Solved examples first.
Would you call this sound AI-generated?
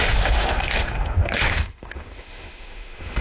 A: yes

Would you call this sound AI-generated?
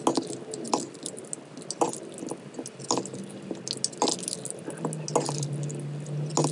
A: no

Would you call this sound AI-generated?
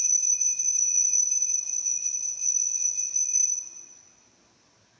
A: no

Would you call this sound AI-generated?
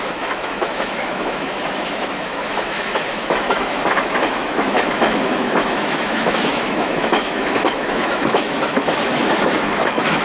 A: yes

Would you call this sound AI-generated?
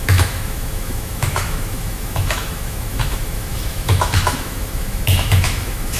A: yes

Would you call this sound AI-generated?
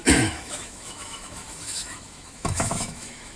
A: yes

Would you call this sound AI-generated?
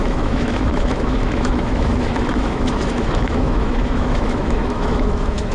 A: yes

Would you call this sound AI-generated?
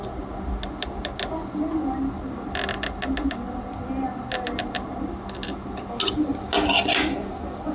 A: no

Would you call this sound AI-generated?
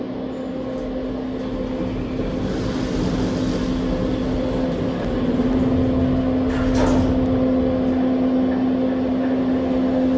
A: no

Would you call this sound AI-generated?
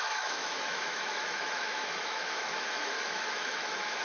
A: yes